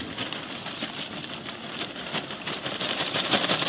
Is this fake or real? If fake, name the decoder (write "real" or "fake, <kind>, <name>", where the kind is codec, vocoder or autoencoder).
real